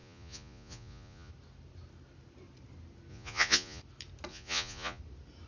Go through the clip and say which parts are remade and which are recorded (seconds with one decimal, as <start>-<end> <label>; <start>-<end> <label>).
0.0-1.3 remade; 1.3-3.1 recorded; 3.1-3.8 remade; 3.8-4.3 recorded; 4.3-5.0 remade; 5.0-5.5 recorded